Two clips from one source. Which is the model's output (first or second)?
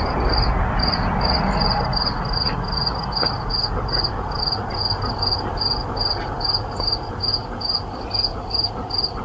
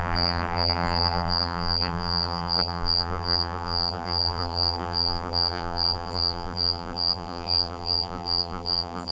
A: second